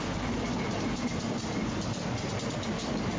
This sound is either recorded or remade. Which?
remade